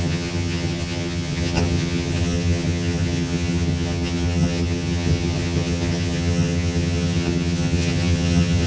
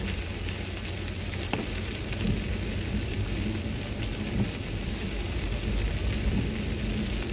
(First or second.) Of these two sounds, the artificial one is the first